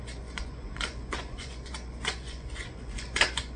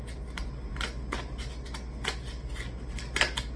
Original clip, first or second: second